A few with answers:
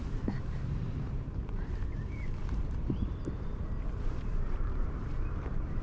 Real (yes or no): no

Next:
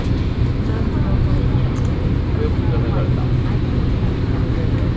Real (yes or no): yes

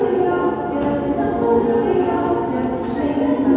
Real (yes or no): yes